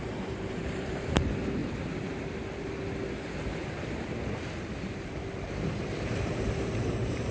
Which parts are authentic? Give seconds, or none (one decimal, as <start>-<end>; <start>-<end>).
1.6-5.7

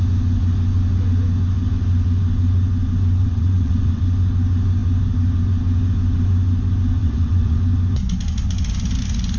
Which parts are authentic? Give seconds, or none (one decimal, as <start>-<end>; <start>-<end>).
0.0-3.2; 4.0-7.0; 7.6-9.4

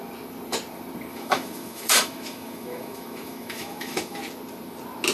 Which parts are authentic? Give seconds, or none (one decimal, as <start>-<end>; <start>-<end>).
0.0-1.1; 4.2-5.1

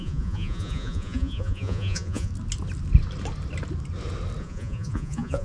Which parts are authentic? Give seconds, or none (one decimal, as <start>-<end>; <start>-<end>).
2.3-4.4

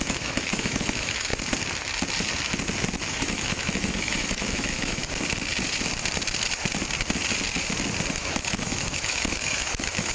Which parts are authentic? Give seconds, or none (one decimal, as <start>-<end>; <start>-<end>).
1.3-3.1; 5.0-8.1